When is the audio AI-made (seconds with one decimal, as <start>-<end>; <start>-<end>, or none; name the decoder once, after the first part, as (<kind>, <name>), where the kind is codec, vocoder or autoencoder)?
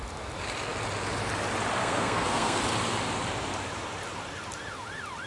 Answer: 1.8-2.6 (codec, SNAC)